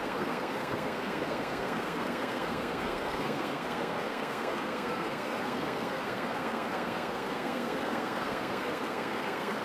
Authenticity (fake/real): fake